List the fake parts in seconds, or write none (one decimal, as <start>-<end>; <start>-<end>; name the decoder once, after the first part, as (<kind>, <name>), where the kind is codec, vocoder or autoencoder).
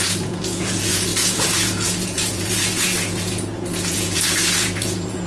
0.0-5.3 (vocoder, Vocos)